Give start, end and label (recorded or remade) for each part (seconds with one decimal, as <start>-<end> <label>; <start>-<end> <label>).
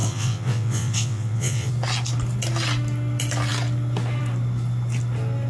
0.0-1.7 remade; 1.7-5.5 recorded